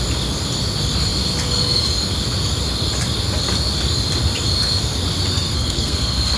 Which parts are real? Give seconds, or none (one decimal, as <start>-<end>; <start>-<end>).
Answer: 0.0-5.3